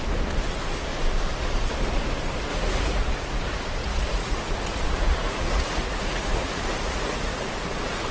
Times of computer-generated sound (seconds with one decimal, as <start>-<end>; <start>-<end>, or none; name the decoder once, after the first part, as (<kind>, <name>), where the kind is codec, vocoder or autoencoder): 2.5-3.2 (vocoder, Vocos); 3.8-8.1